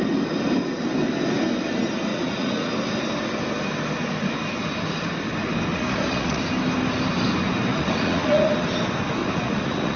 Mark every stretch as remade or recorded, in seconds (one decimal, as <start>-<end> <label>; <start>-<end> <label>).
0.0-2.1 recorded; 2.1-2.7 remade; 2.7-5.7 recorded; 5.7-6.4 remade; 6.4-7.7 recorded; 7.7-8.5 remade; 8.5-9.2 recorded; 9.2-10.0 remade